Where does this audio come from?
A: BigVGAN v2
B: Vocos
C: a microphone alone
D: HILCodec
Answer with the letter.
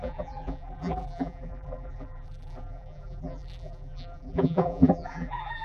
A